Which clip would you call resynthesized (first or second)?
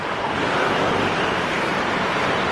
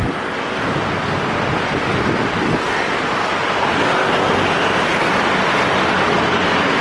first